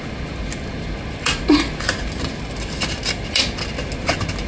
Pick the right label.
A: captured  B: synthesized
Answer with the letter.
A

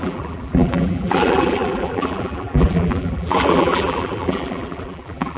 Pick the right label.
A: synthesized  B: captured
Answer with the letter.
A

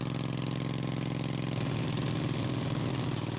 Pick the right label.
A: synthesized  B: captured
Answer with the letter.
B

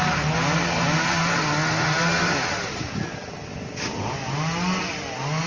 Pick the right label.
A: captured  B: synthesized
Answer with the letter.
A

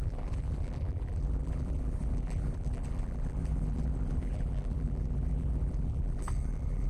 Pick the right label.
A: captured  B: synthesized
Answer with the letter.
B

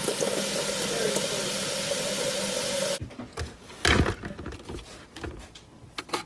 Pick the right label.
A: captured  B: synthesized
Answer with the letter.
A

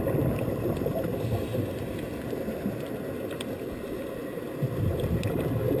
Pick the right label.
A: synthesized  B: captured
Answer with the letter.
B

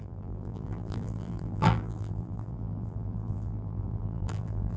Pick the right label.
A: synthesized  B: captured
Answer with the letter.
A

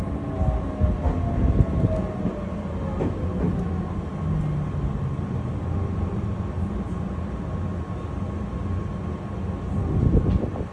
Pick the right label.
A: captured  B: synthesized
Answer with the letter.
A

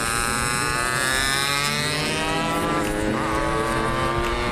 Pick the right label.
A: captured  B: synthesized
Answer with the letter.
A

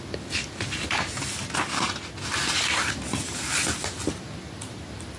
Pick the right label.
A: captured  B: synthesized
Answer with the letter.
A